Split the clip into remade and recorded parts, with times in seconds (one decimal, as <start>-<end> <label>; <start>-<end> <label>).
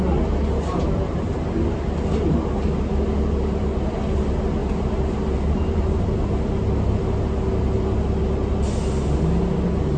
0.0-10.0 recorded